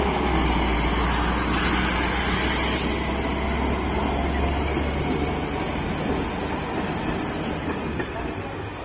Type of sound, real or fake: real